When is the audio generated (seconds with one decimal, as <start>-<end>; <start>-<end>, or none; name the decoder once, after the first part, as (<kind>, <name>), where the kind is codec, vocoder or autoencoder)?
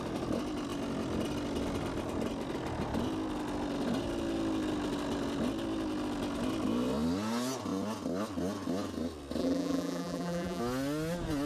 9.4-10.6 (vocoder, BigVGAN v2)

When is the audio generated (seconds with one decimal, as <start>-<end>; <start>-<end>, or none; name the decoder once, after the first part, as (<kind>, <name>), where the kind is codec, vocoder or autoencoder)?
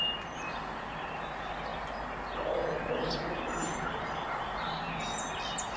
none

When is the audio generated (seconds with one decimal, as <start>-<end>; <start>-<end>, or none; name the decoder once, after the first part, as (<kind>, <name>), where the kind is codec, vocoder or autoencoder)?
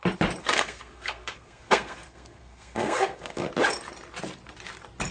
0.4-3.5 (codec, SNAC)